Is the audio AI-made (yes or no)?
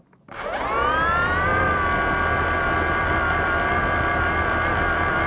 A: no